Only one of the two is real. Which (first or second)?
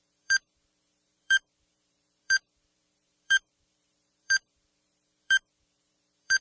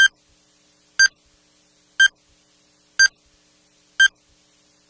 second